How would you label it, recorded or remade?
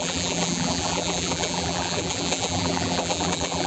remade